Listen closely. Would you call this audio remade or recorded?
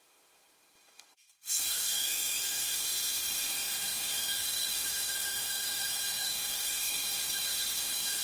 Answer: remade